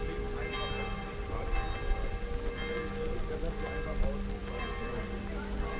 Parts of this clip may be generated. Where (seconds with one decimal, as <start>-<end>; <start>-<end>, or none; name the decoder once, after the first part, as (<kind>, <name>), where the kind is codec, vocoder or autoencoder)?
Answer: none